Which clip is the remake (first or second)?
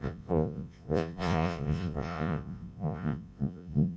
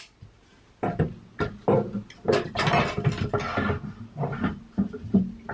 first